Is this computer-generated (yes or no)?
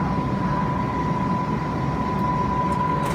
no